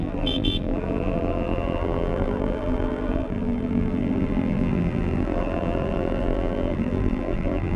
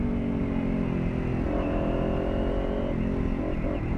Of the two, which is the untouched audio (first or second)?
second